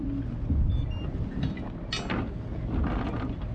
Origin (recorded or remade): recorded